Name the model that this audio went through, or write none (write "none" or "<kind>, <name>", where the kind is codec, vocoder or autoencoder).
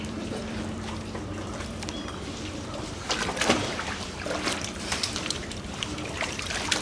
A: vocoder, BigVGAN v2